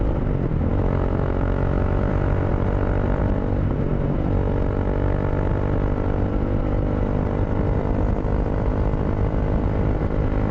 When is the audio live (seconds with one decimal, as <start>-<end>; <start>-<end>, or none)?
0.0-0.7; 2.1-10.5